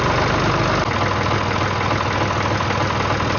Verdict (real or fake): real